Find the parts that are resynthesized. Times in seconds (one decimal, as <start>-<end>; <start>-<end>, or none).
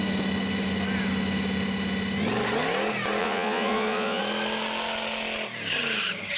3.2-4.2